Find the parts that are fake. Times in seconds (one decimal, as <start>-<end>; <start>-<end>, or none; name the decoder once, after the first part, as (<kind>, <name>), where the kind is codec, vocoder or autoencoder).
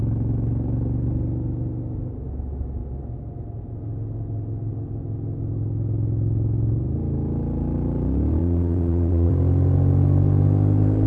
8.4-9.3 (vocoder, Vocos)